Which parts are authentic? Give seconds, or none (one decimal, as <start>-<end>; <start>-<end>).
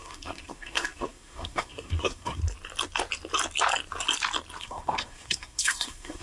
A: 2.4-4.6